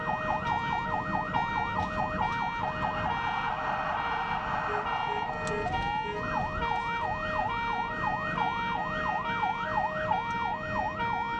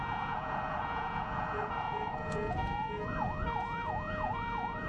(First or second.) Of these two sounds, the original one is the first